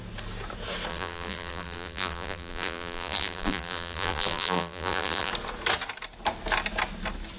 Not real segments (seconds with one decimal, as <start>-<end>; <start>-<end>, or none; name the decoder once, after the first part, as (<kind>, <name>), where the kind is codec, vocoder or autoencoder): 0.9-5.3 (vocoder, BigVGAN v2)